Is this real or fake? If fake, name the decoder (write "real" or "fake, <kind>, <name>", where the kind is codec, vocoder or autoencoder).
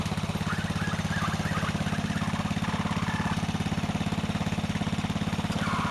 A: real